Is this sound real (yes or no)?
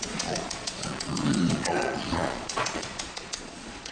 no